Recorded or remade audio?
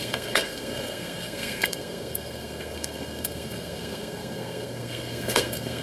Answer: remade